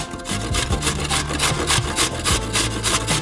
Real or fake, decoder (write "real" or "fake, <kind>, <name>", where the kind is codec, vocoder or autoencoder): real